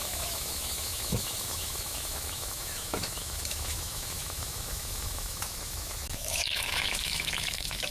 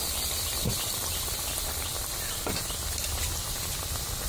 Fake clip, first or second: first